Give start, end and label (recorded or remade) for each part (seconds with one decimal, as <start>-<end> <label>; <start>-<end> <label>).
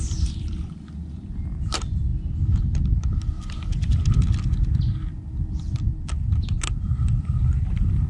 0.0-8.1 recorded